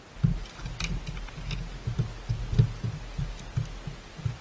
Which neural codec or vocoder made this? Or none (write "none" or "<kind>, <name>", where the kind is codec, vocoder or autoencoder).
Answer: none